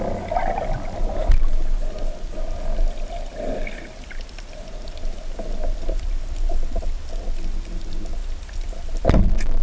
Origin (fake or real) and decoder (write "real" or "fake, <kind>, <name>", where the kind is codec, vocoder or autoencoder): real